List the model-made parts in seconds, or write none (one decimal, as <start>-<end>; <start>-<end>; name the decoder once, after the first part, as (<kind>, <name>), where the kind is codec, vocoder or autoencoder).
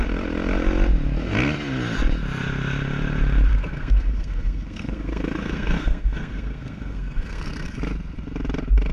3.5-7.8 (codec, SNAC)